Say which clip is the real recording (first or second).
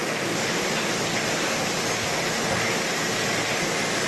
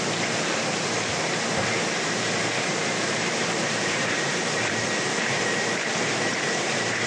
first